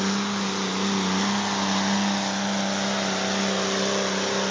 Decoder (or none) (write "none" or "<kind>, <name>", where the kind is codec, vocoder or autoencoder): none